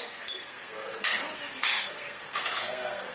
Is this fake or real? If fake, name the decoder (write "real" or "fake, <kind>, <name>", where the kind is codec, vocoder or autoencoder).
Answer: fake, codec, SNAC